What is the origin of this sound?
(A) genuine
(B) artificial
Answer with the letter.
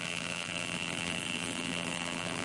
B